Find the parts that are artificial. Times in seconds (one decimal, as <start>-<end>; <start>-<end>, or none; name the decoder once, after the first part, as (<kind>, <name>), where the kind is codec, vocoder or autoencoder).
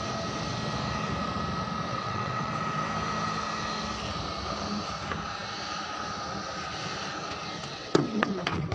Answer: 1.9-2.5 (vocoder, WaveNeXt); 7.7-8.7